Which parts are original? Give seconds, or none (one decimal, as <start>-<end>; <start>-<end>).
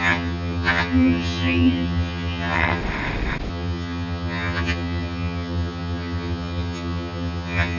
2.8-3.5